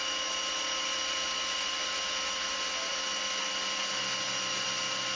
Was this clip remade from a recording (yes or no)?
no